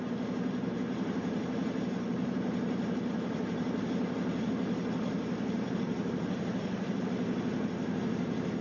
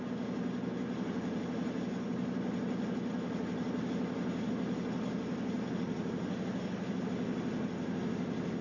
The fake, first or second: first